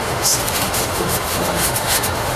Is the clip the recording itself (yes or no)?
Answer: no